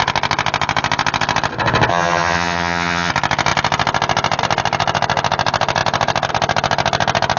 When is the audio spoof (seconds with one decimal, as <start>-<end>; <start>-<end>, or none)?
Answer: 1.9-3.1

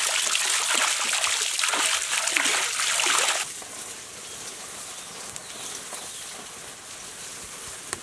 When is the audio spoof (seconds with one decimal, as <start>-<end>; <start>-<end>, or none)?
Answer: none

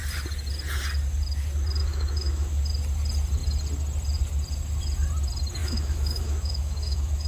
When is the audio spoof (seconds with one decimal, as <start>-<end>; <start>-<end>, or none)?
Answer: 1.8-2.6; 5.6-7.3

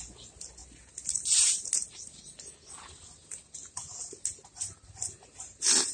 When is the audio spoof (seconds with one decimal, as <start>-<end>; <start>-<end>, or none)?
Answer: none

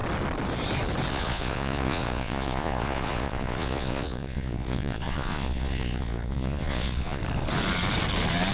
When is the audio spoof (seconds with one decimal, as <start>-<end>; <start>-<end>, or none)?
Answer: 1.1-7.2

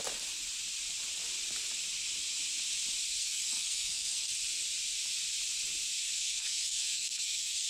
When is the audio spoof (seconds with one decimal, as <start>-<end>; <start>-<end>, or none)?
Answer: 3.2-4.3; 6.0-7.7

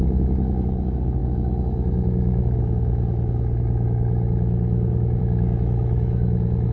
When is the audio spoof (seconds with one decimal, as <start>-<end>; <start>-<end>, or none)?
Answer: 0.0-6.7